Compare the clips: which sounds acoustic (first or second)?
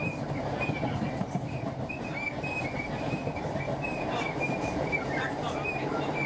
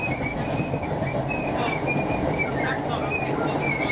second